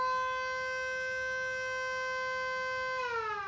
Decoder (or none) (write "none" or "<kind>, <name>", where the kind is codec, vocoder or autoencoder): none